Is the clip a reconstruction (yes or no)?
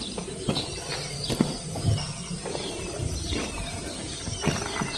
no